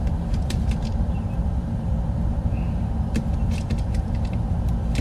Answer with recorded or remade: remade